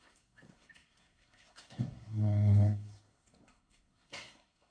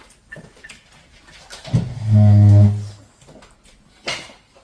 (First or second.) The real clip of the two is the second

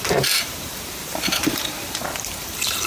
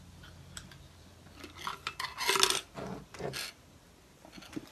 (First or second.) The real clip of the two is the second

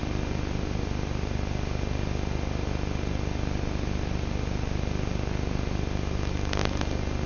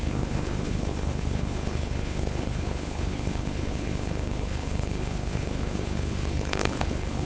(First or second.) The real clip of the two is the first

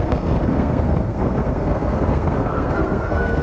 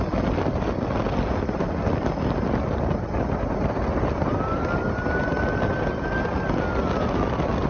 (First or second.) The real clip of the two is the second